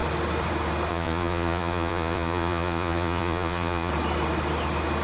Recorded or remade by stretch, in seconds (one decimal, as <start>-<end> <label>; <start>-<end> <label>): 0.0-0.9 recorded; 0.9-3.9 remade; 3.9-5.0 recorded